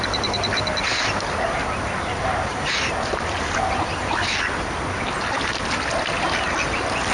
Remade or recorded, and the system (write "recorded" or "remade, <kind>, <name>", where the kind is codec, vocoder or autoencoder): recorded